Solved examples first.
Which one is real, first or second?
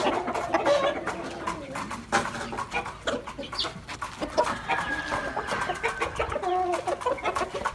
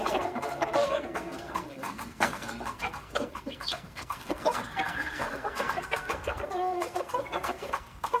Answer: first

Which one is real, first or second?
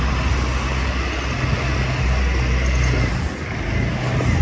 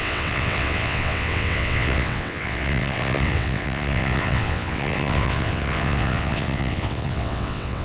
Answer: first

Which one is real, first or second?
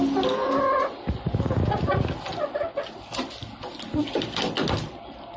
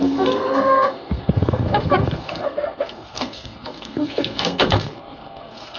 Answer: first